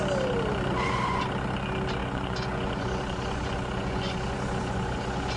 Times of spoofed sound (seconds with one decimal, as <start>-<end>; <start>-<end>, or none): 0.7-1.2; 2.0-5.4